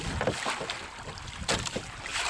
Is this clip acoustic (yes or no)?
yes